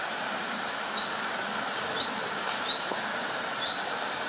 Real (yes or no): yes